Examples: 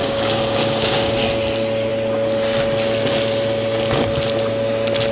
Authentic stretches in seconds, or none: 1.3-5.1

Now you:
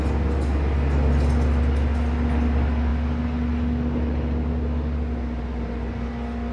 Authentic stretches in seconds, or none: 0.0-6.5

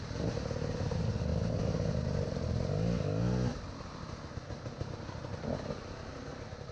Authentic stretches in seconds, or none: 0.0-6.7